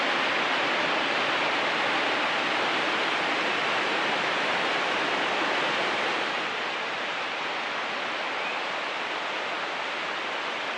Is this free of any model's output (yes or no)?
yes